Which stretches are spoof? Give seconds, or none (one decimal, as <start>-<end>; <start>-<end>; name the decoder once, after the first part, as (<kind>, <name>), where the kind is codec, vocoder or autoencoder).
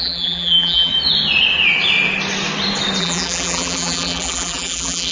0.0-0.9 (vocoder, BigVGAN v2); 3.0-5.1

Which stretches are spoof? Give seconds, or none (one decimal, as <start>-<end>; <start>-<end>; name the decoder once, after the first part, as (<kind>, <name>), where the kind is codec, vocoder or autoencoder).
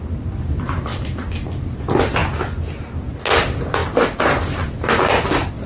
none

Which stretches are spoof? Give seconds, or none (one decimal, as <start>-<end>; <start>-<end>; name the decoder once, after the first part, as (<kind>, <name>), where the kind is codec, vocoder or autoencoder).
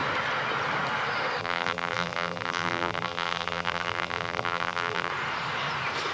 1.4-5.1 (vocoder, BigVGAN v2)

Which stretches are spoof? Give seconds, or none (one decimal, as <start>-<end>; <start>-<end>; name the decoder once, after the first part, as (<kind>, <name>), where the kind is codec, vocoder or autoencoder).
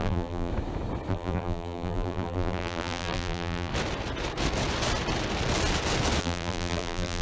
0.0-0.5 (vocoder, BigVGAN v2); 1.1-3.7; 6.2-7.2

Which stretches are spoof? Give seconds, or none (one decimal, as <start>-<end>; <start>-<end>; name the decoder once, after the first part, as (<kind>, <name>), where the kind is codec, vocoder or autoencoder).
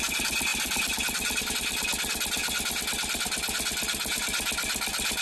0.5-1.5 (vocoder, BigVGAN v2)